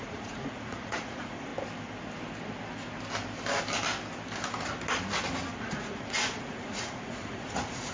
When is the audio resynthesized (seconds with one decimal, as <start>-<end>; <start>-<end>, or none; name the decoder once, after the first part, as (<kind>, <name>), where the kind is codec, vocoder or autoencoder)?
0.0-1.5 (vocoder, Vocos); 5.6-7.9

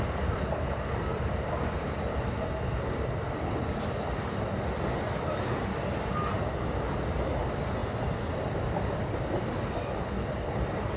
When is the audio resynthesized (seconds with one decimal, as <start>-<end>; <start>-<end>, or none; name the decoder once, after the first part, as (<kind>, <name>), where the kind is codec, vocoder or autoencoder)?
none

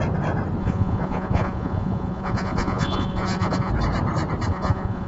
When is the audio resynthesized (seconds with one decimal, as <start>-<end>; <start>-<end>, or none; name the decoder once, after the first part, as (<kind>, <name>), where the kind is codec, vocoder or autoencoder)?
0.6-3.7 (vocoder, Vocos); 4.5-5.1

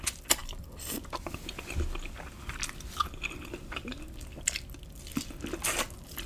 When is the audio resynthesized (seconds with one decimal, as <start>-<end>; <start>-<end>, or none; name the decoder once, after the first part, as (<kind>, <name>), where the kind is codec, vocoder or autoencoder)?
none

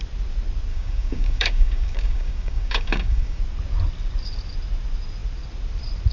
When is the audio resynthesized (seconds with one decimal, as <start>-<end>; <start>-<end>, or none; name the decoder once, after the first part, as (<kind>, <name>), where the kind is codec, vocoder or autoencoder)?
0.7-3.4 (codec, DAC)

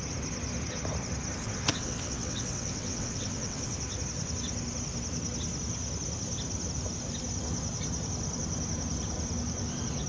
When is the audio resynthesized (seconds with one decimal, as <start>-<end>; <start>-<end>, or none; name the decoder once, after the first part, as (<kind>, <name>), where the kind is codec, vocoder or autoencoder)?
1.4-3.8 (vocoder, WaveNeXt)

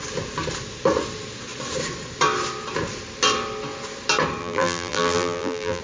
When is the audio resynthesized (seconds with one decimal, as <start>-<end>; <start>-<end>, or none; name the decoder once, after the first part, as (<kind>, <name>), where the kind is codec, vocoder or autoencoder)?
4.4-5.8 (vocoder, BigVGAN v2)

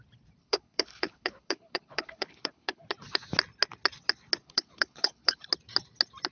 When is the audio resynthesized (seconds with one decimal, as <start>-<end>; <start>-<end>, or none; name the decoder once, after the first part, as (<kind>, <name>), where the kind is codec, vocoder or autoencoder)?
0.4-2.8 (codec, HILCodec); 4.4-5.5